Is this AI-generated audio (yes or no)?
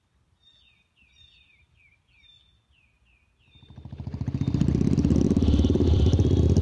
no